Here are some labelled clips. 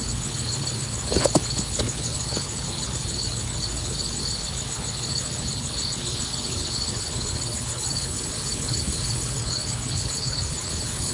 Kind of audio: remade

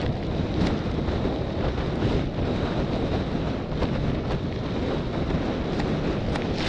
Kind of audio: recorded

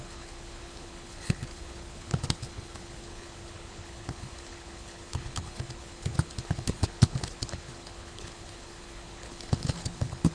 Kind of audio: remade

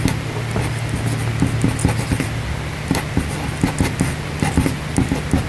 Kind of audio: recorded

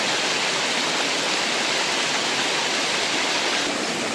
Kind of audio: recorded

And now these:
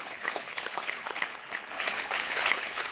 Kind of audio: remade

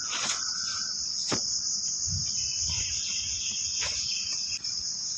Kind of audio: recorded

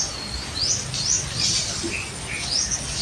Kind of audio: recorded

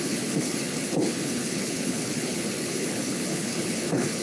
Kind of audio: remade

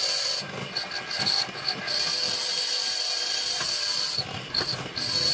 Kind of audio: recorded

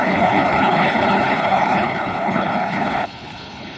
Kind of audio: remade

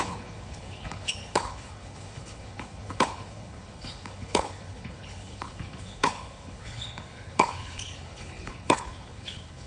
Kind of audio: remade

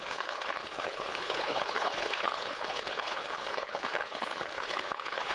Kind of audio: remade